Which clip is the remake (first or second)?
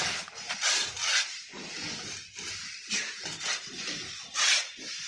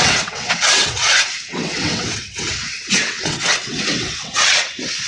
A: second